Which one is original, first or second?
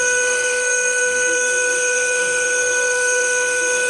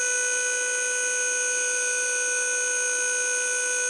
second